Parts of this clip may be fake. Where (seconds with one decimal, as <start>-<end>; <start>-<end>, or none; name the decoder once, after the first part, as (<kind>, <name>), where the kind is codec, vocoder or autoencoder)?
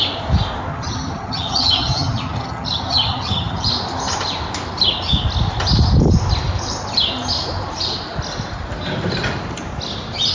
0.7-3.7 (vocoder, HiFi-GAN)